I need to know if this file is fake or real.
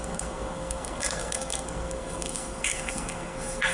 fake